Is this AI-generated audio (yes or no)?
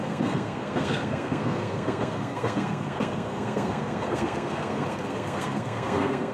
yes